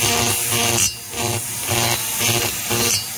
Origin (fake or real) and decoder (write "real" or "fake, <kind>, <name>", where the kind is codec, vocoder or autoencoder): real